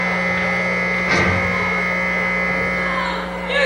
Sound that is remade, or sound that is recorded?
recorded